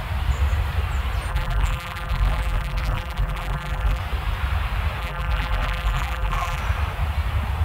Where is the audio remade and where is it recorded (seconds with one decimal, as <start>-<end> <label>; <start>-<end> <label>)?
0.0-1.3 recorded; 1.3-4.0 remade; 4.0-5.0 recorded; 5.0-6.6 remade; 6.6-7.6 recorded